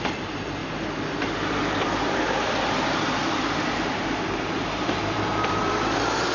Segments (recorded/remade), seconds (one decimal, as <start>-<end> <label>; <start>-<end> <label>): 0.0-0.6 remade; 0.6-1.2 recorded; 1.2-3.2 remade; 3.2-3.7 recorded; 3.7-6.3 remade